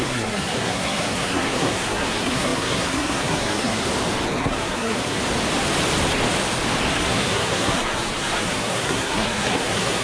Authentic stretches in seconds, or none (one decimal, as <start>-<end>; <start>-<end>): 3.8-4.4; 5.2-6.9